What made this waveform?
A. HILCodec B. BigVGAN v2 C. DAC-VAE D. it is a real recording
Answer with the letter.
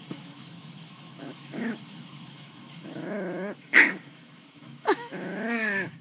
C